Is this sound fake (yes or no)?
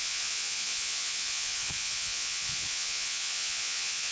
yes